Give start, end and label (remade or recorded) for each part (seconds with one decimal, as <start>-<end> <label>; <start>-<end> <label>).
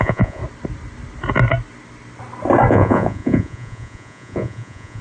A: 0.0-0.4 remade; 0.4-2.7 recorded; 2.7-5.0 remade